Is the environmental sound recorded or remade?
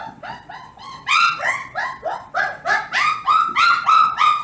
remade